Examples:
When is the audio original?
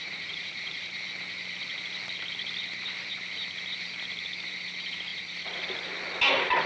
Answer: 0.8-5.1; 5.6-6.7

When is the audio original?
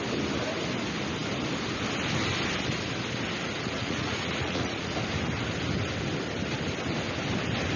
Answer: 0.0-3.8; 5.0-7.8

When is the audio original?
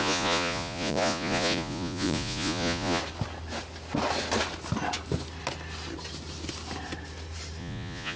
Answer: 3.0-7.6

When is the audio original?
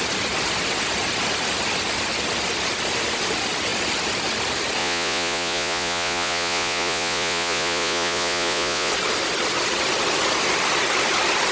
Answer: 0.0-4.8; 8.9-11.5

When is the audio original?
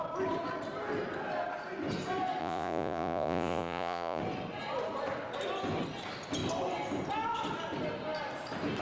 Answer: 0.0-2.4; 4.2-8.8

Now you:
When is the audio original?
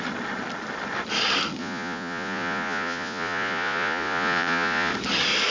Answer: 0.0-1.6; 4.9-5.5